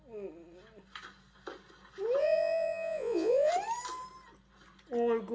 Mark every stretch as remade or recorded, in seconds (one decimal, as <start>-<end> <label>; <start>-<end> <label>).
0.0-2.2 recorded; 2.2-3.5 remade; 3.5-5.3 recorded